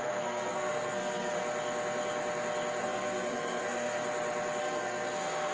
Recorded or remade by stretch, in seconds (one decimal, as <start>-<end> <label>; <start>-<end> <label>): 0.0-1.4 remade; 1.4-2.8 recorded; 2.8-4.0 remade; 4.0-4.6 recorded; 4.6-5.5 remade